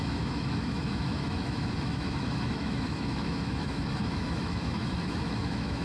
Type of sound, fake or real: fake